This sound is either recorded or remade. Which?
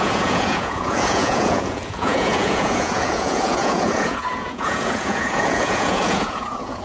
remade